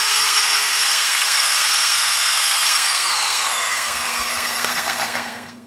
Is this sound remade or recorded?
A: remade